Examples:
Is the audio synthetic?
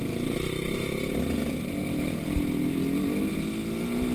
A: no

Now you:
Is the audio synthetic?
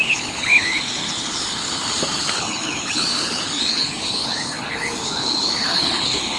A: yes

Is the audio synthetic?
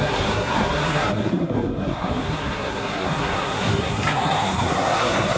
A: yes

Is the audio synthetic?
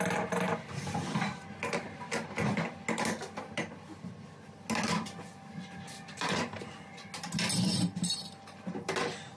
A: no